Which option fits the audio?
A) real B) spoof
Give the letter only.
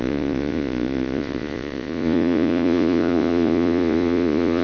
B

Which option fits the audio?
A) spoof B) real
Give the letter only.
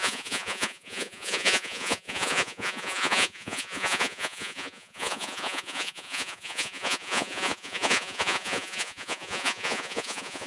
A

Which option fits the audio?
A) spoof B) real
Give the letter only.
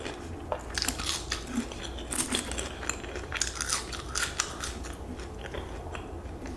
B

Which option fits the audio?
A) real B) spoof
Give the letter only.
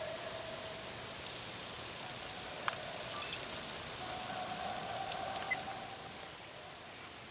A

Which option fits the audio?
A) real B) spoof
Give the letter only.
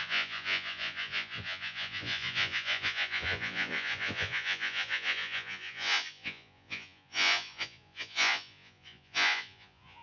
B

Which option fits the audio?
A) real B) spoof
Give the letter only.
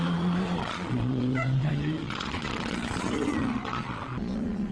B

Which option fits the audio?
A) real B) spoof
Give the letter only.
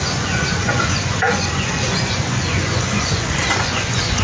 B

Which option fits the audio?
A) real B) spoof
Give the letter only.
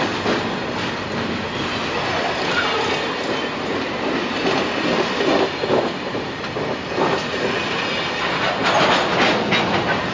A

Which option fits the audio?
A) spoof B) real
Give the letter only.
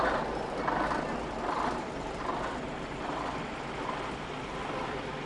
B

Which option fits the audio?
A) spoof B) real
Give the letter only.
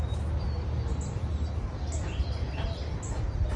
B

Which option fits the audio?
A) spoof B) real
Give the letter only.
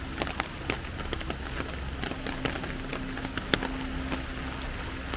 B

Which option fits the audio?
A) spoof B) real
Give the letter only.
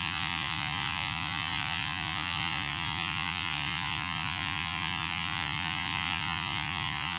A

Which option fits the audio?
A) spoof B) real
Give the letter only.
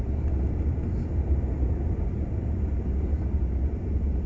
B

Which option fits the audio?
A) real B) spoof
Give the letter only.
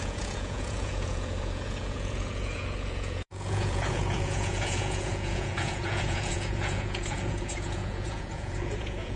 B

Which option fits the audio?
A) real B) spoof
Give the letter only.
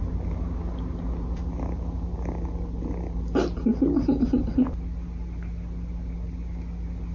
A